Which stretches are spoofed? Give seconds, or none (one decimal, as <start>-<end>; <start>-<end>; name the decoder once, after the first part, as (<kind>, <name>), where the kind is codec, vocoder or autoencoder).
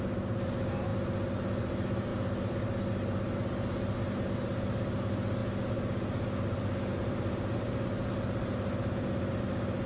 none